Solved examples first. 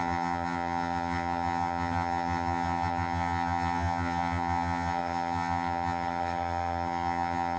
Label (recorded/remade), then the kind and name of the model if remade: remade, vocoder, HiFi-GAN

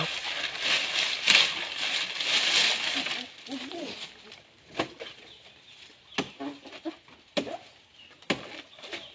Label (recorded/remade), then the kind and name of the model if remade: recorded